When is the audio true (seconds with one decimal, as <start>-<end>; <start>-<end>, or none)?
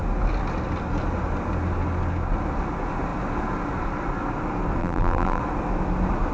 0.0-4.8; 5.4-6.3